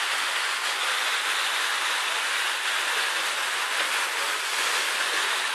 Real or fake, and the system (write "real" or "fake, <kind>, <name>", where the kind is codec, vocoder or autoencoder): fake, vocoder, Vocos